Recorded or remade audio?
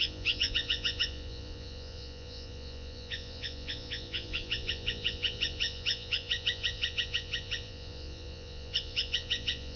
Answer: remade